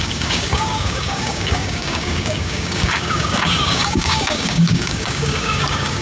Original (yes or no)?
no